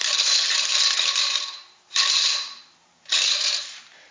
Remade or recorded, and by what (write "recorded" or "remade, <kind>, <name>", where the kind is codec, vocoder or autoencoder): remade, vocoder, BigVGAN v2